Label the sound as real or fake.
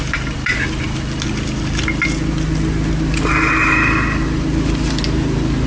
real